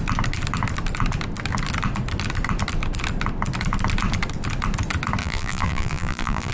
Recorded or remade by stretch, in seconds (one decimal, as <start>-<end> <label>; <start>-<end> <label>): 0.0-5.2 recorded; 5.2-6.5 remade